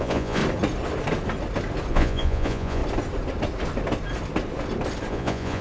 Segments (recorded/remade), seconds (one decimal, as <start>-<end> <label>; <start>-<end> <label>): 0.0-0.4 remade; 0.4-1.9 recorded; 1.9-2.8 remade; 2.8-5.1 recorded; 5.1-5.6 remade